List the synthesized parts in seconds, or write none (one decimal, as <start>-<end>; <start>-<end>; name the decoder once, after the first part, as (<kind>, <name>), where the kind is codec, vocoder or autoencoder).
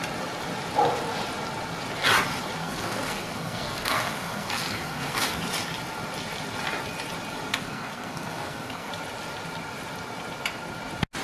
2.6-5.4 (codec, SNAC); 7.5-8.9